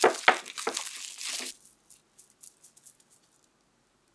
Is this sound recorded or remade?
recorded